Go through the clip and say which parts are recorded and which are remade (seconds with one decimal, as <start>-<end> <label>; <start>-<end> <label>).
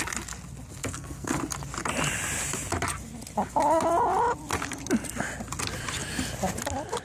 0.0-0.8 recorded; 0.8-1.4 remade; 1.4-7.0 recorded